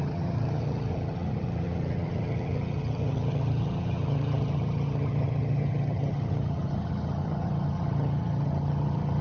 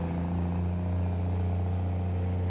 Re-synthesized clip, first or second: first